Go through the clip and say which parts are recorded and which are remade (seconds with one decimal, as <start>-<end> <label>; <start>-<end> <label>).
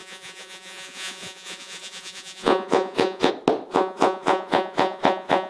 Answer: 0.0-3.3 remade; 3.3-3.7 recorded; 3.7-5.5 remade